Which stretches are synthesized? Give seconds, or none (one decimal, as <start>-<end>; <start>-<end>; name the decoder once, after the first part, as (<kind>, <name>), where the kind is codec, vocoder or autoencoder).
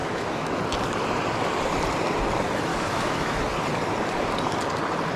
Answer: 0.0-0.6 (autoencoder, DAC-VAE); 2.7-3.4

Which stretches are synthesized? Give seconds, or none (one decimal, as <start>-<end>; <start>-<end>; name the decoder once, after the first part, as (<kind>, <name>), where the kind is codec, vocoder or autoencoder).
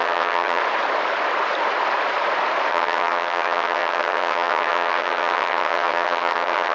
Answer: 0.0-0.6 (vocoder, HiFi-GAN); 2.7-6.7